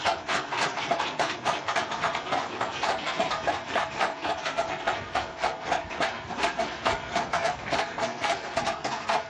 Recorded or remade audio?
remade